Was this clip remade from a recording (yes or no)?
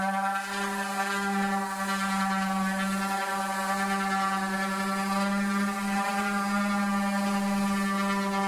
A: no